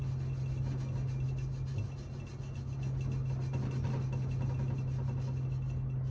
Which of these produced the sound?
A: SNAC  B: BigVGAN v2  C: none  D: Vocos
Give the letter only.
C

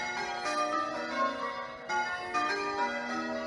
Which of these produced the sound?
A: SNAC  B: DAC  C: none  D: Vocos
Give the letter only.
C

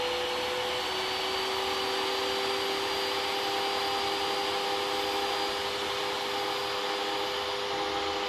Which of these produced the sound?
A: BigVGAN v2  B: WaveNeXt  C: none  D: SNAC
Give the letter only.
C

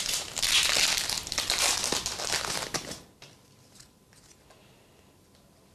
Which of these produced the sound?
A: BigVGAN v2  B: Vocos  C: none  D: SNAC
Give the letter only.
C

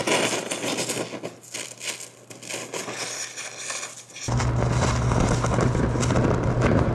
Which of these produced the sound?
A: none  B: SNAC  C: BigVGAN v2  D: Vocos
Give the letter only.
A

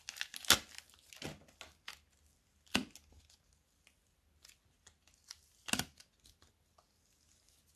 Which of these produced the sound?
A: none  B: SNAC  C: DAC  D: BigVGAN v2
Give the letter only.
A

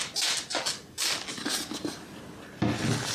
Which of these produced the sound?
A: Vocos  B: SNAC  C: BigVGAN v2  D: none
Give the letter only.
D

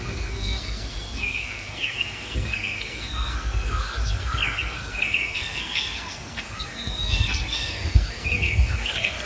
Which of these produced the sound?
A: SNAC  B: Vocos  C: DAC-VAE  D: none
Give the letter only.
A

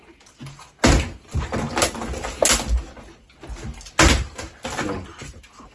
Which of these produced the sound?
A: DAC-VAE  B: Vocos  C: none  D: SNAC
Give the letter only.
C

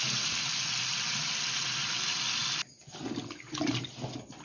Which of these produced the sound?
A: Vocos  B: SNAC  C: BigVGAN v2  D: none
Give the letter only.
D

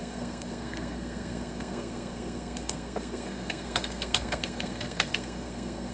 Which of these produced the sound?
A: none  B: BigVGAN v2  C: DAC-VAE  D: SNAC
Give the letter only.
D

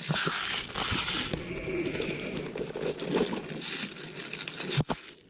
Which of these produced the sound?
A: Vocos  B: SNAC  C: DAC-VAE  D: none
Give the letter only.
D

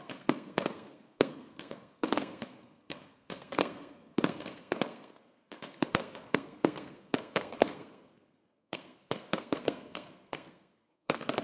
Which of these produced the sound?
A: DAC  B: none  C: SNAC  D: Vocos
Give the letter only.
C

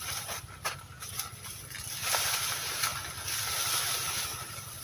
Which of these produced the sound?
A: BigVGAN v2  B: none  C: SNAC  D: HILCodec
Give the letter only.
B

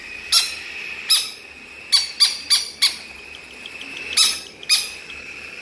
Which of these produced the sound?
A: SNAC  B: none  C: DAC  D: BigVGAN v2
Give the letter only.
B